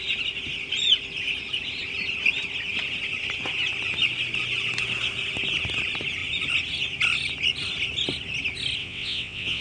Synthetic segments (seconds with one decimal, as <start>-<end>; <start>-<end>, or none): 8.8-9.6

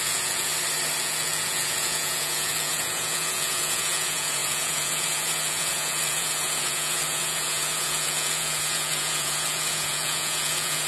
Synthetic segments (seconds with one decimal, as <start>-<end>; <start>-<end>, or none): 0.0-0.5; 1.0-10.9